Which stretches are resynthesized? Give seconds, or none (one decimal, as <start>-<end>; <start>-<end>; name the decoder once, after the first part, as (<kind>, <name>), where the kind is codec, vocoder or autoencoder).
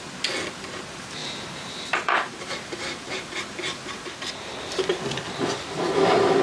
1.2-2.5 (vocoder, BigVGAN v2)